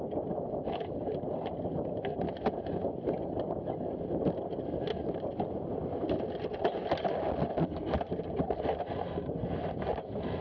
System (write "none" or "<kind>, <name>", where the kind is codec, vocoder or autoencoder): none